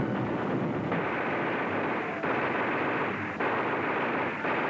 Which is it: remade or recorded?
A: recorded